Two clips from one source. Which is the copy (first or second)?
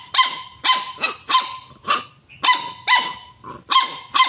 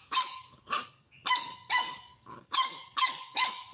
second